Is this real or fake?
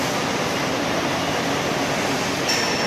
real